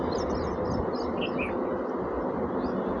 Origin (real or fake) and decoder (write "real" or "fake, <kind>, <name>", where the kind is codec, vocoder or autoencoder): real